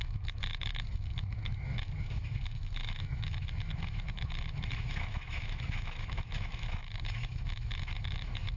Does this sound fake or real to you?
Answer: fake